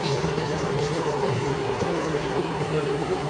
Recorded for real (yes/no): no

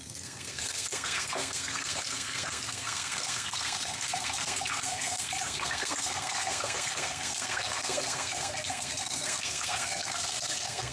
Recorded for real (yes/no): no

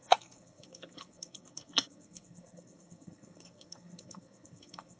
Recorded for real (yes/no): no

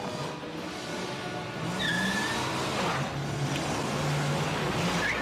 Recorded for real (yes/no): yes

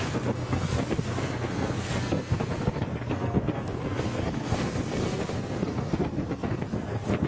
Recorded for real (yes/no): no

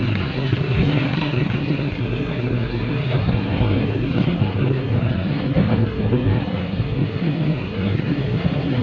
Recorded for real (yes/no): no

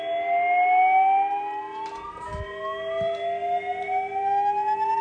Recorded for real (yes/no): yes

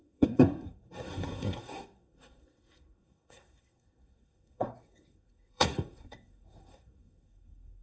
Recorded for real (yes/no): no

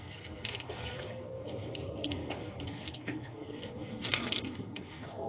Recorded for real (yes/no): no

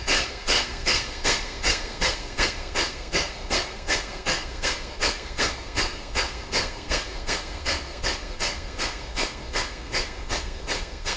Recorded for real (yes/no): no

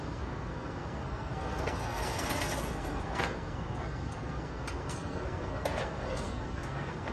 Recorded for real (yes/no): no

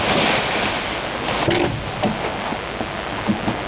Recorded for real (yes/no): yes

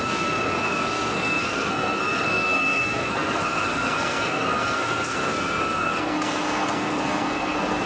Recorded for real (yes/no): no